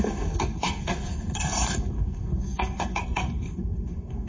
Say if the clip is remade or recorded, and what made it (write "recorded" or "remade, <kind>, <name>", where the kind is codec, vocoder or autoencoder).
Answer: remade, codec, SNAC